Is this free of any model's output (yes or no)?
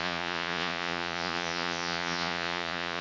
no